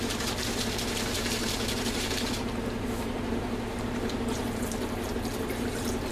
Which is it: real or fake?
fake